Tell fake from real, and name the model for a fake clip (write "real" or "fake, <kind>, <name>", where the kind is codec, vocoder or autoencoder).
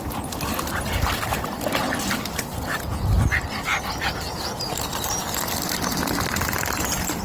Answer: real